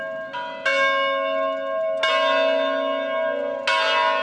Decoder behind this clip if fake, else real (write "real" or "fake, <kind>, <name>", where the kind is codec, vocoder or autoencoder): real